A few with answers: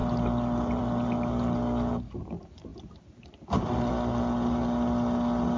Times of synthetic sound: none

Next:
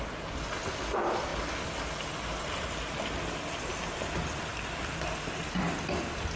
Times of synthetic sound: none